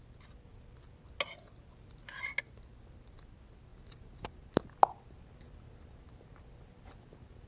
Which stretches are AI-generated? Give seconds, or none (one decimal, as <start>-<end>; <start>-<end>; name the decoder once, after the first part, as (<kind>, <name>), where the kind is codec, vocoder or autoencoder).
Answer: none